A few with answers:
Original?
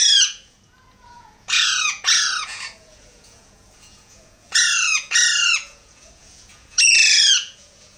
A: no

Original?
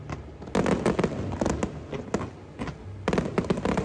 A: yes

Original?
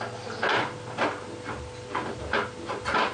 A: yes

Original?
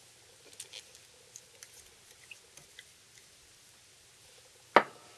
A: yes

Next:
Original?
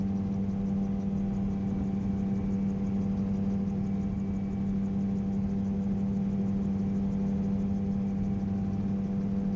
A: yes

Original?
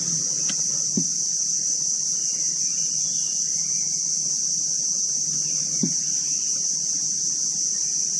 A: yes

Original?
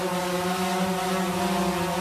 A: yes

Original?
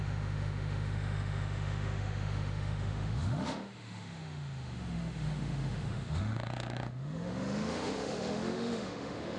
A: no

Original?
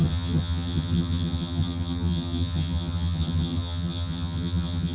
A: no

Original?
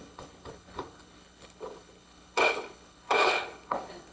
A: no